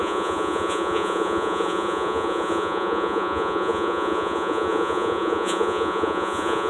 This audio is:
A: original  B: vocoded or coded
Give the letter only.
B